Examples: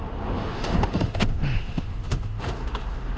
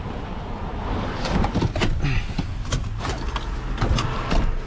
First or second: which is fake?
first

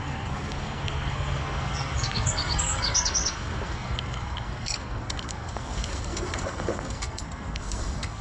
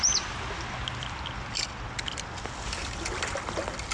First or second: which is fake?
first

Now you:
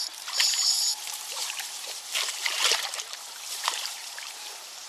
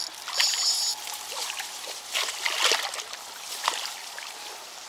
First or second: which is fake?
first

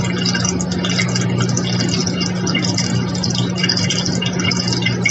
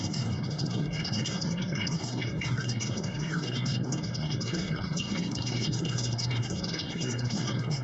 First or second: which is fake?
second